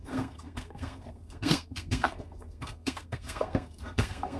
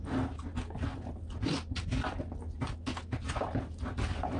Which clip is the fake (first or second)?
first